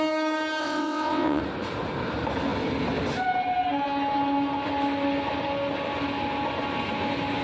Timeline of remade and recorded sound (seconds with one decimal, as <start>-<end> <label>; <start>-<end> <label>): 0.0-0.6 recorded; 0.6-1.4 remade; 1.4-7.4 recorded